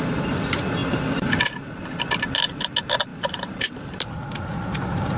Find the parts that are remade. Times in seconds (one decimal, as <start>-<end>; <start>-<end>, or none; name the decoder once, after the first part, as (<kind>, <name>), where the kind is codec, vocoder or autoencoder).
3.1-5.2 (vocoder, BigVGAN v2)